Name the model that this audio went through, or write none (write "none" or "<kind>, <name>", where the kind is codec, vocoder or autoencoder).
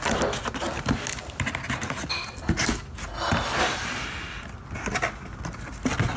none